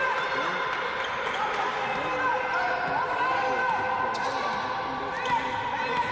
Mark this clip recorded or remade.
recorded